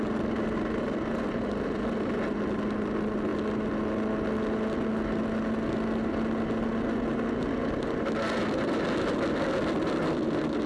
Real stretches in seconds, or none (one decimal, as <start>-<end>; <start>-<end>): 0.0-10.7